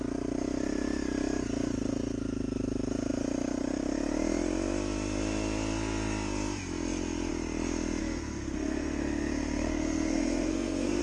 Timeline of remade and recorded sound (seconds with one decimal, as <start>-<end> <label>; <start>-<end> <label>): 0.0-8.0 recorded; 8.0-11.0 remade